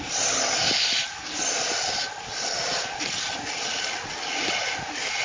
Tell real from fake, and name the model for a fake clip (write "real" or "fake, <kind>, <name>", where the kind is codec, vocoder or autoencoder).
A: real